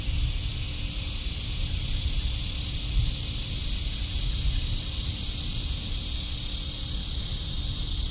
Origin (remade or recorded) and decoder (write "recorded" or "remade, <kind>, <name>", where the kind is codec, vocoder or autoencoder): recorded